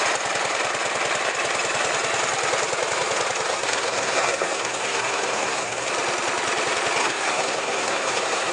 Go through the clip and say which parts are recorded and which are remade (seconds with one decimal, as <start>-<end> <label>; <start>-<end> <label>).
0.0-3.5 recorded; 3.5-5.9 remade; 5.9-7.0 recorded; 7.0-8.5 remade